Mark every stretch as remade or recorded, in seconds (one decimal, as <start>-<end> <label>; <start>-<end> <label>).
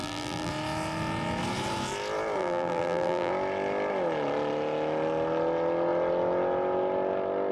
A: 0.0-0.5 remade; 0.5-2.4 recorded; 2.4-3.3 remade; 3.3-7.5 recorded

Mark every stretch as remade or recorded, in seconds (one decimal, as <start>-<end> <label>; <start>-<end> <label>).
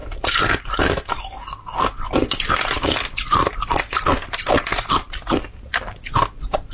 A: 0.0-0.8 remade; 0.8-6.7 recorded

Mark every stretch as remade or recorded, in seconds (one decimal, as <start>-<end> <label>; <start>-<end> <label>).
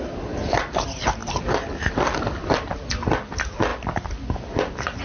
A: 0.0-5.0 recorded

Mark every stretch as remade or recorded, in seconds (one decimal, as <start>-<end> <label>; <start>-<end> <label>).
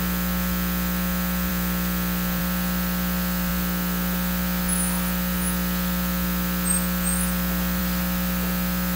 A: 0.0-9.0 recorded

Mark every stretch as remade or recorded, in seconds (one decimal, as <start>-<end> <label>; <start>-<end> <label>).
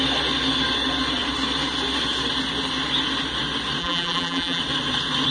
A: 0.0-3.8 recorded; 3.8-4.6 remade; 4.6-5.3 recorded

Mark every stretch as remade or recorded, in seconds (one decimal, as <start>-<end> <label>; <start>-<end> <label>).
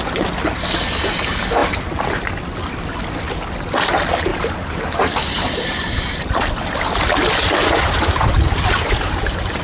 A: 0.0-4.3 recorded; 4.3-6.2 remade; 6.2-7.6 recorded; 7.6-9.6 remade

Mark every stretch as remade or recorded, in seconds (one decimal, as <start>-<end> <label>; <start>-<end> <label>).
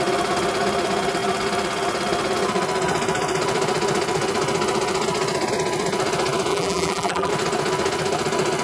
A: 0.0-6.5 recorded; 6.5-7.3 remade; 7.3-8.6 recorded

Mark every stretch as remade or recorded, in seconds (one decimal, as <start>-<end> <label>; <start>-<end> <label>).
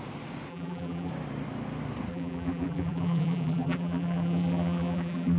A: 0.0-0.5 recorded; 0.5-1.1 remade; 1.1-2.1 recorded; 2.1-5.4 remade